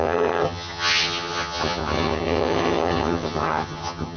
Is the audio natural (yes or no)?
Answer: no